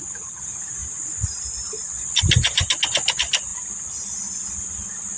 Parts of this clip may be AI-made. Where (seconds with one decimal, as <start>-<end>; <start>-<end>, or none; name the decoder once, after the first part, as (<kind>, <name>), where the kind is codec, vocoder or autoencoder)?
none